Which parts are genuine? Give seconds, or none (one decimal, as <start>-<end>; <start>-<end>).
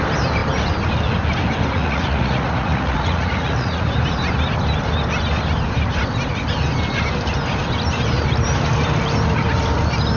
0.0-1.7; 3.8-10.2